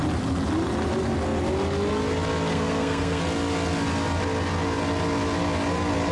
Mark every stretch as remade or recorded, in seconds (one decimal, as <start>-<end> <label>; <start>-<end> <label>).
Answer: 0.0-2.5 recorded; 2.5-3.2 remade; 3.2-6.1 recorded